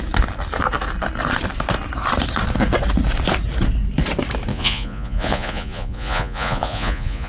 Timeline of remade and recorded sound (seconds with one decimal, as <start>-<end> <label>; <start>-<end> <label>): 0.0-4.5 recorded; 4.5-7.3 remade